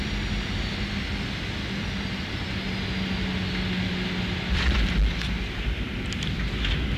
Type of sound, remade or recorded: recorded